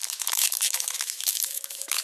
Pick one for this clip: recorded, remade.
remade